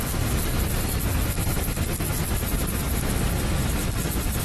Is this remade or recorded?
recorded